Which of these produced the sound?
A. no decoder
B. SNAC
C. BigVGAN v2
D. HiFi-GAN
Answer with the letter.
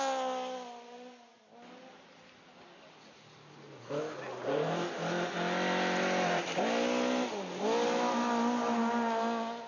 A